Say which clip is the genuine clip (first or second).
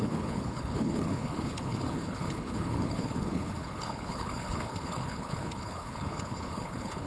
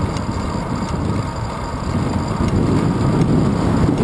second